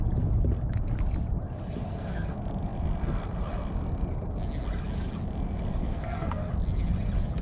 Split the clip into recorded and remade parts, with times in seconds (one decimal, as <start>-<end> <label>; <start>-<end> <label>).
0.0-1.8 recorded; 1.8-2.3 remade; 2.3-5.8 recorded; 5.8-6.5 remade; 6.5-7.4 recorded